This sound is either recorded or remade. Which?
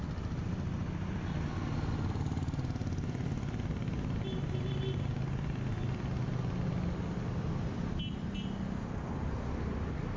recorded